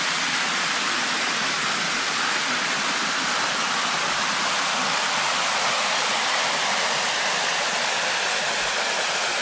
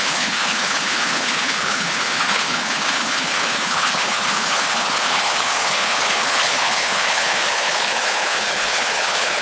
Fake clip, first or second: second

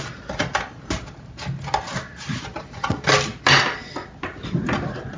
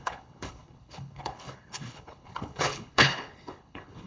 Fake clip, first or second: second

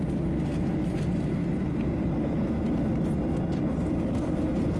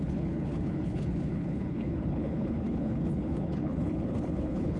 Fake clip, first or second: second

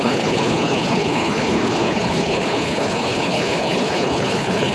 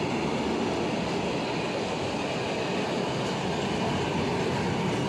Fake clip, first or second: first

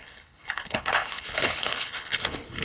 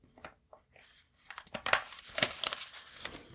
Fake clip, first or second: first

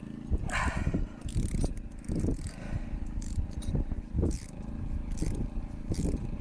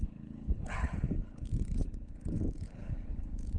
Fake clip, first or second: second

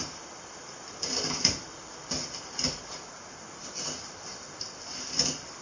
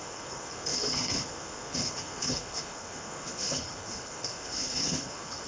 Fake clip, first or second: second